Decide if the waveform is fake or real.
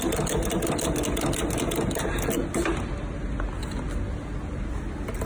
real